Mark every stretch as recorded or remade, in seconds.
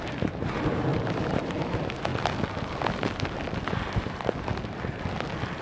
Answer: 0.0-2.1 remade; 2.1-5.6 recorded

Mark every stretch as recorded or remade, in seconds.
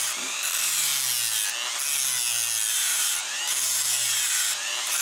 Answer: 0.0-0.9 remade; 0.9-2.7 recorded; 2.7-5.0 remade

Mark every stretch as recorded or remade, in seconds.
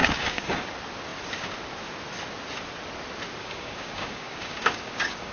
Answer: 0.0-0.7 remade; 0.7-3.4 recorded; 3.4-5.3 remade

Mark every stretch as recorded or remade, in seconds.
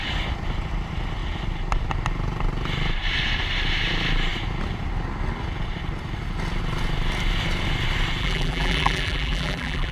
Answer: 0.0-8.2 recorded; 8.2-9.9 remade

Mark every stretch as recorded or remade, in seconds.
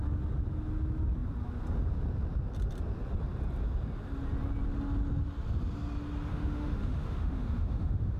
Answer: 0.0-6.3 recorded; 6.3-8.2 remade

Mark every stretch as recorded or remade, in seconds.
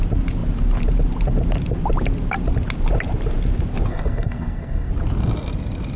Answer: 0.0-3.9 recorded; 3.9-4.9 remade; 4.9-6.0 recorded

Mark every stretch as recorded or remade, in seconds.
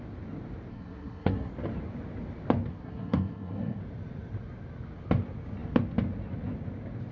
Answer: 0.0-0.7 recorded; 0.7-1.5 remade; 1.5-2.7 recorded; 2.7-3.8 remade; 3.8-7.1 recorded